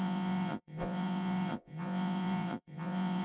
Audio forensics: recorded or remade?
remade